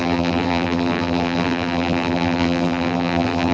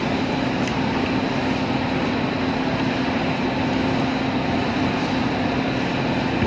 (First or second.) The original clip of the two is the second